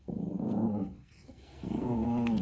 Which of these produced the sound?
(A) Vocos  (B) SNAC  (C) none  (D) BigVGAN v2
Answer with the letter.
B